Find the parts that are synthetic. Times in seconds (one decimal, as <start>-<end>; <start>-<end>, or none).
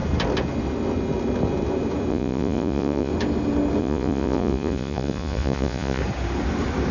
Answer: 2.1-3.1; 3.8-6.0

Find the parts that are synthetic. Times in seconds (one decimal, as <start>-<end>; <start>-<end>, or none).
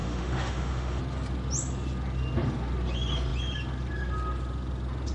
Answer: 0.0-1.0